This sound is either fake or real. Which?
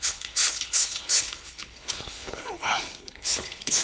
fake